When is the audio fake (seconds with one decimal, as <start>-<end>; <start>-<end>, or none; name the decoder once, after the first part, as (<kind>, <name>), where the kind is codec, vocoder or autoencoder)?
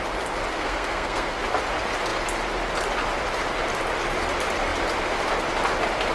0.5-1.4 (codec, SNAC)